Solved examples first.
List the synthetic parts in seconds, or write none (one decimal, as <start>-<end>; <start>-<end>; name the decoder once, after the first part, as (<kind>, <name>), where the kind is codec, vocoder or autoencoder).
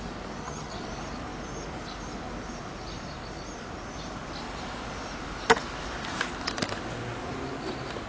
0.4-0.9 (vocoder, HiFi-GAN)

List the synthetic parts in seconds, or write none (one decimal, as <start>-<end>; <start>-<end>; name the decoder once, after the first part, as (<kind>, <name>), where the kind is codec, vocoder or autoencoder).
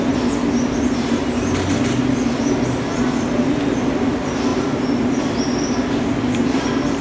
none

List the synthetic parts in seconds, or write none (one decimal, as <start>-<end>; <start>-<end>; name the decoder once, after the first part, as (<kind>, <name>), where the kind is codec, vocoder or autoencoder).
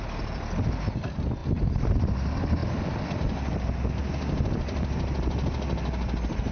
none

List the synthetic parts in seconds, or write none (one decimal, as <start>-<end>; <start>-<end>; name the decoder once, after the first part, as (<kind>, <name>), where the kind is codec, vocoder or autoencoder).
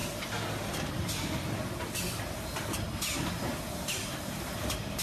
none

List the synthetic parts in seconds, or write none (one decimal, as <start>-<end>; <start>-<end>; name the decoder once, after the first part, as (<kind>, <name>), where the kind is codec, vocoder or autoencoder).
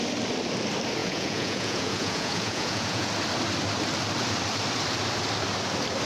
1.0-3.1 (vocoder, Vocos)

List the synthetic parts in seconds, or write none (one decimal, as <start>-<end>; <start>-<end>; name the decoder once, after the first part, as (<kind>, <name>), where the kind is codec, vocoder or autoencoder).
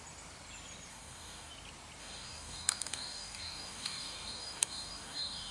0.9-1.5 (codec, DAC); 2.0-5.5